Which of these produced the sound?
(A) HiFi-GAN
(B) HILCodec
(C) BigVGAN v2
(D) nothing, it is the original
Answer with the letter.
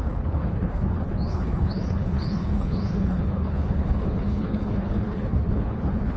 B